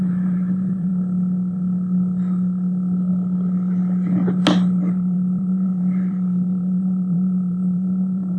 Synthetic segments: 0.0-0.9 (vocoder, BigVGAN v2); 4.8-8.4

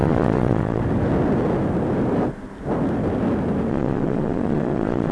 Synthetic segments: 0.0-0.8 (vocoder, Vocos); 3.7-5.1

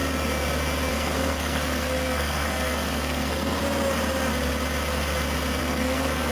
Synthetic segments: 0.9-3.6 (codec, SNAC); 5.6-6.3

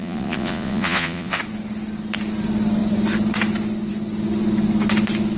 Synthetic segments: 0.0-1.4 (vocoder, Vocos)

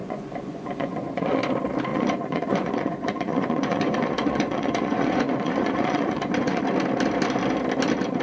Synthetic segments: 0.0-1.4 (vocoder, Vocos); 1.9-6.6